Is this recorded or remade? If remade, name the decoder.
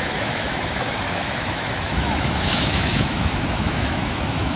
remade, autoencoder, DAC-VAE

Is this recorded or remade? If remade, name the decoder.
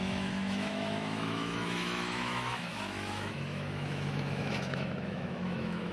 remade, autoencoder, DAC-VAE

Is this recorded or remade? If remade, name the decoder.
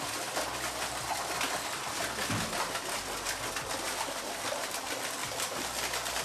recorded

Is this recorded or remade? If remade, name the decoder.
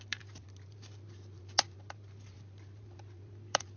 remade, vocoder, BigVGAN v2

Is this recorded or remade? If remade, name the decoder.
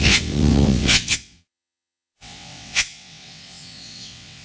remade, vocoder, WaveNeXt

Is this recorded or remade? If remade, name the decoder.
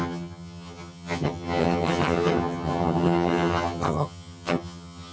remade, vocoder, HiFi-GAN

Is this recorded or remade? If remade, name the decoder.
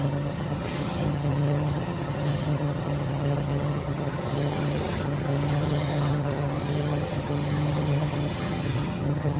remade, vocoder, HiFi-GAN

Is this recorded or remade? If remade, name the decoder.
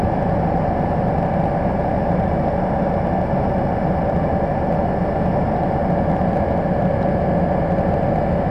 recorded